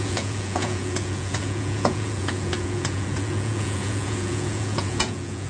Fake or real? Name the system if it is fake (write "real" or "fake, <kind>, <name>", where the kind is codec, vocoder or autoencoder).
fake, vocoder, Vocos